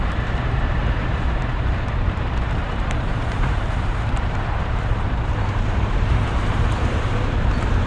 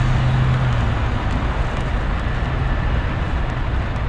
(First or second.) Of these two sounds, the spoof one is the first